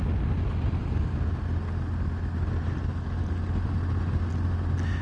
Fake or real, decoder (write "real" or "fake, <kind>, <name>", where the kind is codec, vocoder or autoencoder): real